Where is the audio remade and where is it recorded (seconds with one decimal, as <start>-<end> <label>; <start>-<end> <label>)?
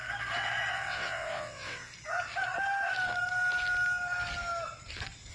0.0-0.7 recorded; 0.7-1.9 remade; 1.9-5.3 recorded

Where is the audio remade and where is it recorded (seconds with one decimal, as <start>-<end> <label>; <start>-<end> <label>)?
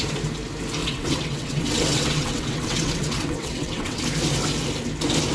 0.0-0.8 recorded; 0.8-4.0 remade; 4.0-5.3 recorded